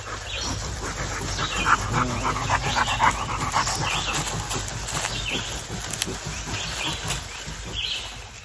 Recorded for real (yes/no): yes